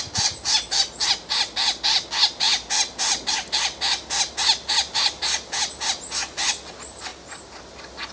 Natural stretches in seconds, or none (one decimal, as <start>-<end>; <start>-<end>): 0.0-8.1

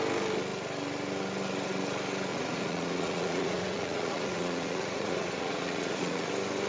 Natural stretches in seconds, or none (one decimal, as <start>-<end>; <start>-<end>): 0.0-2.3; 6.3-6.7

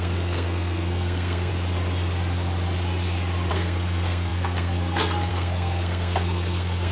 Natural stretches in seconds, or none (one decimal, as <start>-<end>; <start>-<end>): 1.5-3.5